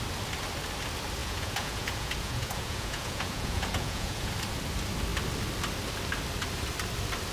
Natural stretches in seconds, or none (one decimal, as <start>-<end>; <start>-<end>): 0.0-1.2; 4.3-7.3